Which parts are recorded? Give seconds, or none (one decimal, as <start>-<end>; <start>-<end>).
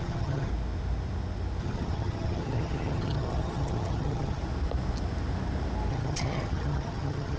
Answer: 0.5-1.6; 4.4-5.9